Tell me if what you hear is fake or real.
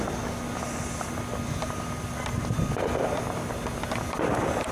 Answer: real